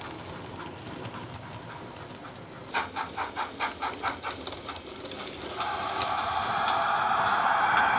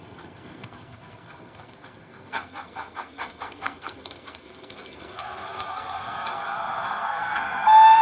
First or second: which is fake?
second